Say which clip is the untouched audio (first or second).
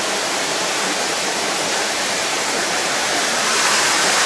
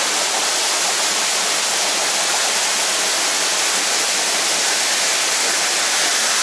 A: second